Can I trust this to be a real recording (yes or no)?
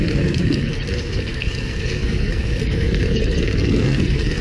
no